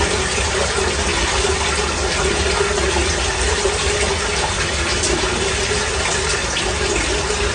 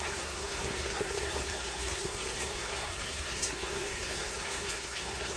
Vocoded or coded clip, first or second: second